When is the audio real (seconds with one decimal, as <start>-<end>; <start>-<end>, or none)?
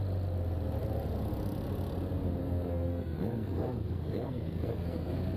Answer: 0.0-2.4